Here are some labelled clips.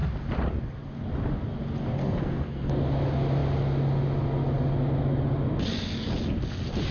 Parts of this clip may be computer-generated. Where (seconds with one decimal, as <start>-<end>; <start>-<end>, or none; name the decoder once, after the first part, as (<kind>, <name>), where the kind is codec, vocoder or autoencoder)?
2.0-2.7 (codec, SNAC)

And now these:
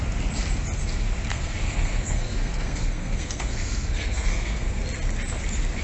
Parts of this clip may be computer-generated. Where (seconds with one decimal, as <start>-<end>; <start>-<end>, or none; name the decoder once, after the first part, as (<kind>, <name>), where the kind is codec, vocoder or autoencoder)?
1.3-4.8 (codec, SNAC)

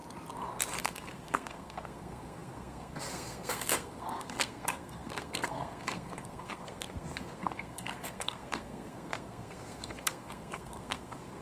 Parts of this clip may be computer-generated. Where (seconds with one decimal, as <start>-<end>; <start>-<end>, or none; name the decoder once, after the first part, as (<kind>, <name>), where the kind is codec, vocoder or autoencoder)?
0.8-11.4 (codec, SNAC)

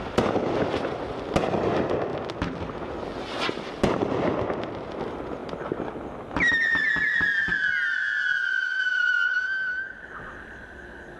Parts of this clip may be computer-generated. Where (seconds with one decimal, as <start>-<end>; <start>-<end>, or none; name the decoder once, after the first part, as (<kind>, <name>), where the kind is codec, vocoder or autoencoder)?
none